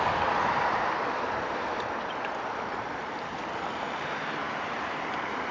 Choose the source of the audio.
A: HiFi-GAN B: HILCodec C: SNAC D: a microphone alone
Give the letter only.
D